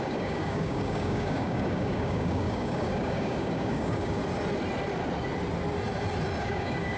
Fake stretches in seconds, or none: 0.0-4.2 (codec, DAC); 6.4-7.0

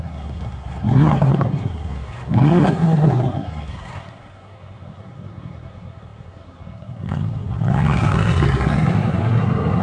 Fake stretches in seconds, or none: 0.0-9.8 (codec, SNAC)

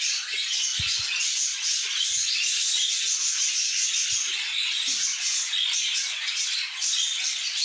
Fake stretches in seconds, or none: none

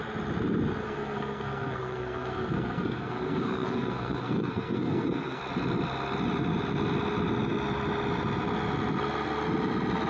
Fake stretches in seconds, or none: 0.8-5.4 (codec, SNAC)

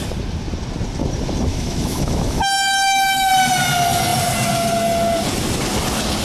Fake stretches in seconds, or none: 1.5-3.3 (autoencoder, DAC-VAE)